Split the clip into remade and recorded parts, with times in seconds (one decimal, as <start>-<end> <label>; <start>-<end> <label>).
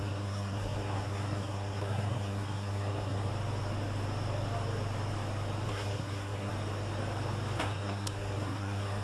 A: 0.0-3.3 remade; 3.3-5.7 recorded; 5.7-6.5 remade; 6.5-7.6 recorded; 7.6-9.0 remade